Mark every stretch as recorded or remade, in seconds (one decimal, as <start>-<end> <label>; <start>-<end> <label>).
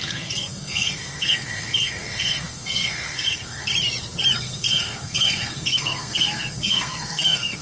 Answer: 0.0-3.7 remade; 3.7-4.4 recorded; 4.4-7.6 remade